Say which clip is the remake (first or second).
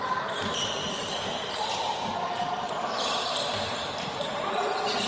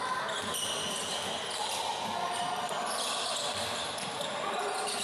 first